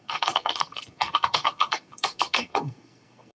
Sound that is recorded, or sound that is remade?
remade